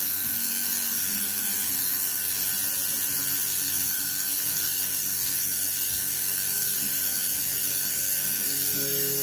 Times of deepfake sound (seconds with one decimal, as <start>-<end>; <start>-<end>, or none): 0.0-2.5; 3.5-9.2